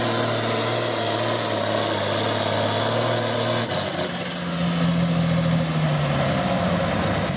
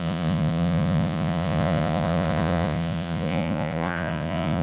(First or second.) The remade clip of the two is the second